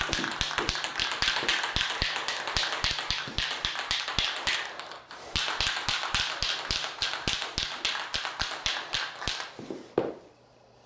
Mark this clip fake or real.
real